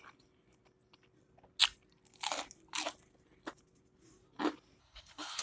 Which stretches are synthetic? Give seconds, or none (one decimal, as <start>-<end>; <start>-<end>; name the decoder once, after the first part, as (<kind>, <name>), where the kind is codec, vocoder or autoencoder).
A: 4.8-5.4 (codec, HILCodec)